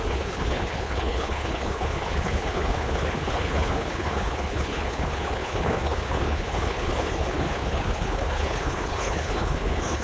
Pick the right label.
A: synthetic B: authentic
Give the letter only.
A